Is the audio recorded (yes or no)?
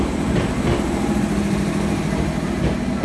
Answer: yes